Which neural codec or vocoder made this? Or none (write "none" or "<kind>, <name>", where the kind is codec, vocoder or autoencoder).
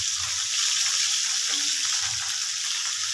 none